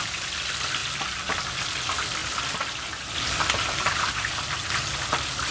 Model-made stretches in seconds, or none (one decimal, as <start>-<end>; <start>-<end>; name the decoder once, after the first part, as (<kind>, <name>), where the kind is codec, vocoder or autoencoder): 0.0-0.8 (vocoder, BigVGAN v2); 1.5-2.2; 3.5-5.5